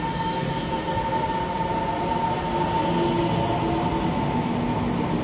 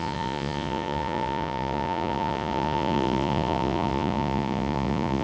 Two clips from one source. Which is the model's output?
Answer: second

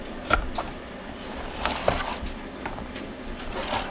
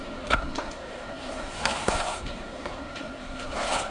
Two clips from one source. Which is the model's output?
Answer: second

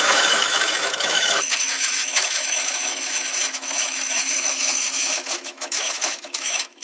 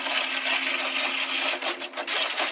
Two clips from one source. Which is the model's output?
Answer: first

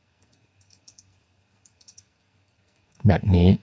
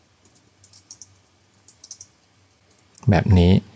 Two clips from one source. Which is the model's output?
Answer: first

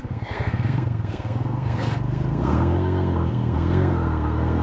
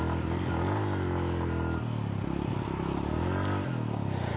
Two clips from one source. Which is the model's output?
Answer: first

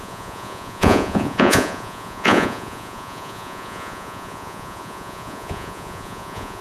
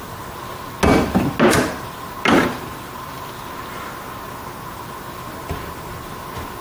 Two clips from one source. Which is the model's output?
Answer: first